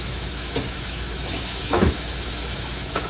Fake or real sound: fake